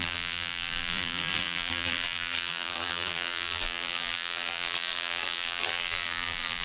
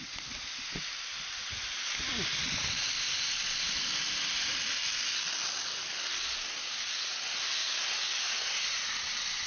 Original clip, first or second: second